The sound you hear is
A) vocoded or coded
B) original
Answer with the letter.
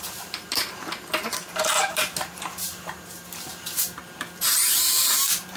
A